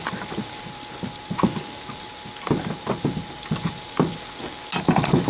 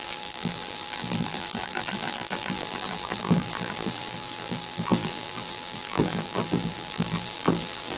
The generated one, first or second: second